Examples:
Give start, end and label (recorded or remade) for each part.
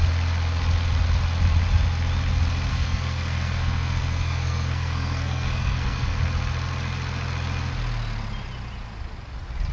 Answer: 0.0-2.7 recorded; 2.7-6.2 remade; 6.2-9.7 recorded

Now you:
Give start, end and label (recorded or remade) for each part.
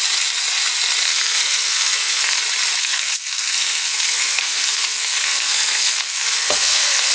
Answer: 0.0-1.0 recorded; 1.0-2.4 remade; 2.4-2.8 recorded; 2.8-7.1 remade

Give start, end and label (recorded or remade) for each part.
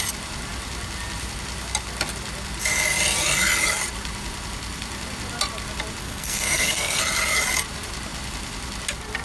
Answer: 0.0-6.0 recorded; 6.0-7.0 remade; 7.0-9.2 recorded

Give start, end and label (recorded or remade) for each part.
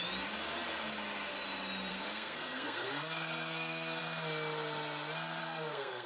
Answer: 0.0-1.9 recorded; 1.9-4.0 remade; 4.0-5.4 recorded; 5.4-6.1 remade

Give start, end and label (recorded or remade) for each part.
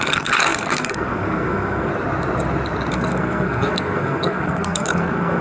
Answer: 0.0-1.9 remade; 1.9-2.9 recorded; 2.9-5.4 remade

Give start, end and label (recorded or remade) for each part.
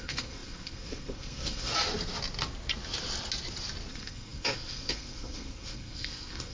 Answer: 0.0-1.7 remade; 1.7-3.9 recorded; 3.9-6.5 remade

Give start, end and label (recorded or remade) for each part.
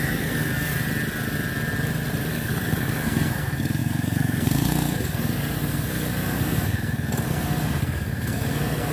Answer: 0.0-0.7 remade; 0.7-2.3 recorded; 2.3-8.9 remade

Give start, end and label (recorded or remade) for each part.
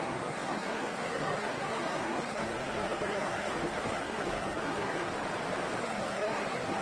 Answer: 0.0-5.1 remade; 5.1-5.8 recorded; 5.8-6.8 remade